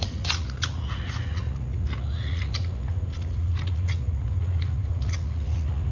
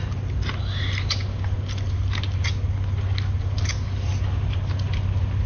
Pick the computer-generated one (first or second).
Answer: first